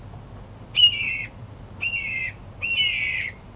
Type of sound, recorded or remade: recorded